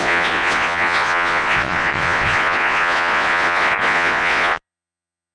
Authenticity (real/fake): fake